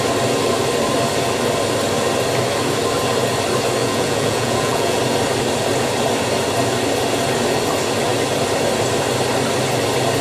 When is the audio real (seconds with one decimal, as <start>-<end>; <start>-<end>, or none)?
0.0-3.8; 5.0-10.2